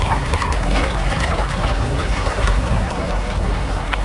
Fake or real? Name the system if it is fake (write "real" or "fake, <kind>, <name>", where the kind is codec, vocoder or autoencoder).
fake, codec, SNAC